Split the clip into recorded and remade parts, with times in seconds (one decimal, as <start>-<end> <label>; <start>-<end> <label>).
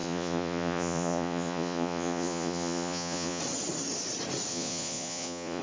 0.0-3.4 remade; 3.4-4.5 recorded; 4.5-5.6 remade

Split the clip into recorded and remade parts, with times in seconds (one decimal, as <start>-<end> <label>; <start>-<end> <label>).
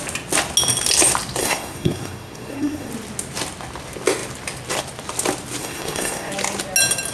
0.0-1.4 recorded; 1.4-2.9 remade; 2.9-5.6 recorded; 5.6-6.3 remade; 6.3-7.1 recorded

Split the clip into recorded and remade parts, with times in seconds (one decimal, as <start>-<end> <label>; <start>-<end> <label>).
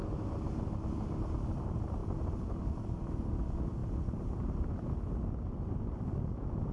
0.0-3.8 recorded; 3.8-4.9 remade; 4.9-6.7 recorded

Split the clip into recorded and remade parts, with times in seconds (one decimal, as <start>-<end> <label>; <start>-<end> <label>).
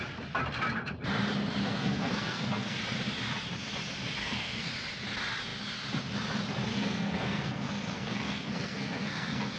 0.0-1.6 recorded; 1.6-2.8 remade; 2.8-4.2 recorded; 4.2-4.7 remade; 4.7-6.7 recorded; 6.7-9.6 remade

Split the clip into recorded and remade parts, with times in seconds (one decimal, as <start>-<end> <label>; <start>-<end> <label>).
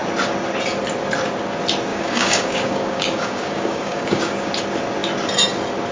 0.0-1.9 recorded; 1.9-4.5 remade; 4.5-5.9 recorded